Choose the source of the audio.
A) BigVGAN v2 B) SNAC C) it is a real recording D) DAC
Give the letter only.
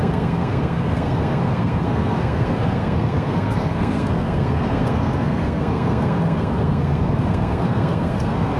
B